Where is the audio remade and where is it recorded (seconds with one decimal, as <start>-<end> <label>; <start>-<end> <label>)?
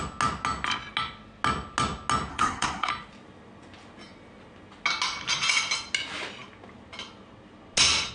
0.0-2.3 recorded; 2.3-2.9 remade; 2.9-8.1 recorded